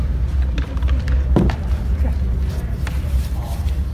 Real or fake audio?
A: fake